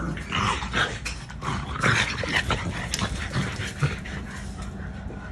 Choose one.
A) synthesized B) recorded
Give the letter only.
B